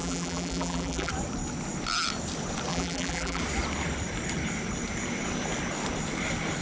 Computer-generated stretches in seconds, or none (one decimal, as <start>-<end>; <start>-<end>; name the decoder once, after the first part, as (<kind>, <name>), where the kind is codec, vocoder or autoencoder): 0.0-1.1 (vocoder, BigVGAN v2); 2.7-3.4